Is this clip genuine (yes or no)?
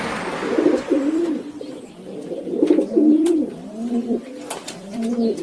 no